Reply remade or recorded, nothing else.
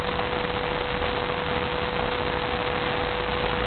recorded